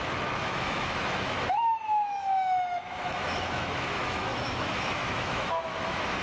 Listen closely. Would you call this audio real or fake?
fake